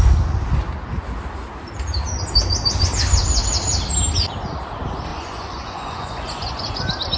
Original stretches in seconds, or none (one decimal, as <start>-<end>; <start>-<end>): 0.0-5.1; 6.8-7.2